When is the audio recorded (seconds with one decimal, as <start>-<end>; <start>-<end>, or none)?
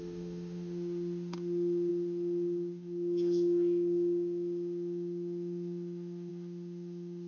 none